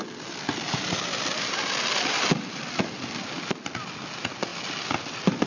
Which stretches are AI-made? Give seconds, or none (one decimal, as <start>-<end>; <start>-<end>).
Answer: none